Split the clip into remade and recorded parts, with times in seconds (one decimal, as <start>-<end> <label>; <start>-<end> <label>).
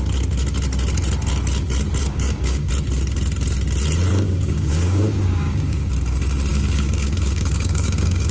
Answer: 0.0-2.0 recorded; 2.0-2.7 remade; 2.7-4.1 recorded; 4.1-5.9 remade; 5.9-6.5 recorded; 6.5-8.3 remade